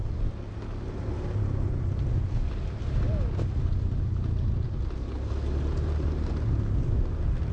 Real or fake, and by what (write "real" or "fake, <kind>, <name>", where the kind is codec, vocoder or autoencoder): real